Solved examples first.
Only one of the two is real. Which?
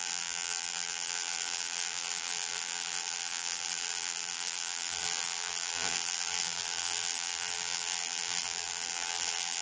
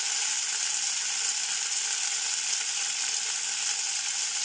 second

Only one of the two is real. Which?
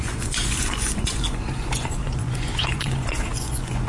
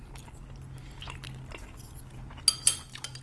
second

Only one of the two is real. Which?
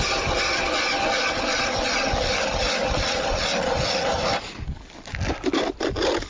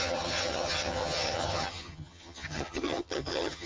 first